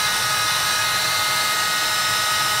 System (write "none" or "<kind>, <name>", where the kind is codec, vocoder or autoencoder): none